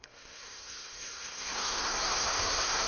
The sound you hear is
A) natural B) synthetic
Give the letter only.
B